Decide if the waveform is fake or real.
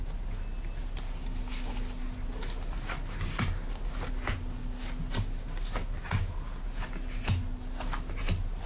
real